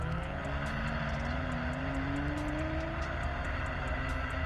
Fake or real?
real